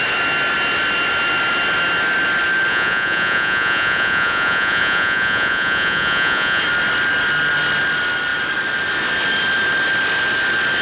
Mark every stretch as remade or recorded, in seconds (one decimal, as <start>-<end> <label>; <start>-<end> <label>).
0.0-2.7 recorded; 2.7-6.6 remade; 6.6-10.8 recorded